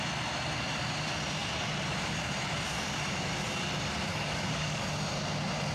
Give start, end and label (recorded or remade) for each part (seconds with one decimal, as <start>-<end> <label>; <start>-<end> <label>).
0.0-4.1 recorded; 4.1-4.8 remade; 4.8-5.7 recorded